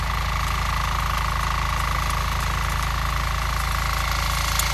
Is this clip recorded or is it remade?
recorded